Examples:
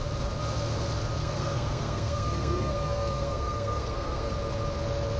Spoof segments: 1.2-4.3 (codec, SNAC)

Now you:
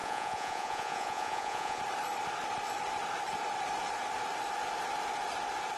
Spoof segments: 0.0-1.8 (vocoder, Vocos)

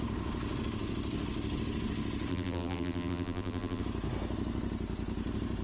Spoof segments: 2.3-3.8 (vocoder, BigVGAN v2)

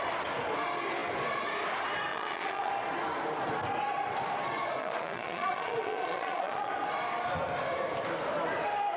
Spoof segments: 2.1-2.7 (vocoder, Vocos); 4.8-6.7

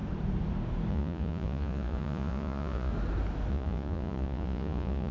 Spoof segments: 0.9-2.9 (vocoder, Vocos); 3.5-5.1